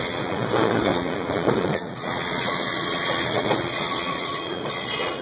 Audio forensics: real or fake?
fake